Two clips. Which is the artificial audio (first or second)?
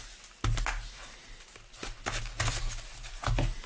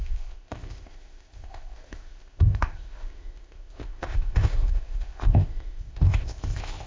second